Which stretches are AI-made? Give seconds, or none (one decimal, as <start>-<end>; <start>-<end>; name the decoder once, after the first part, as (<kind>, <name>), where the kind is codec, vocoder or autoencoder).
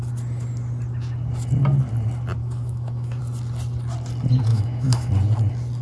2.4-3.2 (autoencoder, DAC-VAE); 4.5-5.1